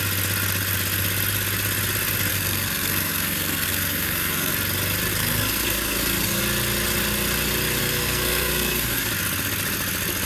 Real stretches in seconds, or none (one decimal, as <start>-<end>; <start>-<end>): 0.0-2.3; 4.5-5.1; 6.4-7.8; 9.1-10.3